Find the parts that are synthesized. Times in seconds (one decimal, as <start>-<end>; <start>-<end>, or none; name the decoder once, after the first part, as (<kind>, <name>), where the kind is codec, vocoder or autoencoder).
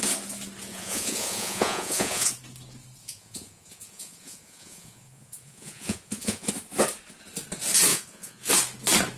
0.7-2.3 (vocoder, Vocos); 3.0-6.5; 7.9-8.5